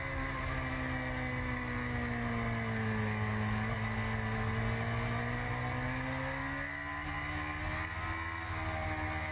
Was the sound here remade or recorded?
recorded